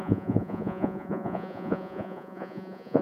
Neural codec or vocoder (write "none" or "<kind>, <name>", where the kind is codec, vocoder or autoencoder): vocoder, Vocos